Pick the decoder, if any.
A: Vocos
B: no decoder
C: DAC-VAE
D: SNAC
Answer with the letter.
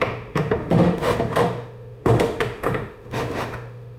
C